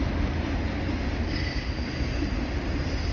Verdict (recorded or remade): recorded